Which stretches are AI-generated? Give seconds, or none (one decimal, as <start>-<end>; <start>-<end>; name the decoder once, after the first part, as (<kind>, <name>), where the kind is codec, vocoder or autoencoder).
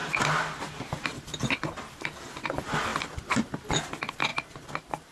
2.9-3.6 (vocoder, BigVGAN v2); 4.3-5.1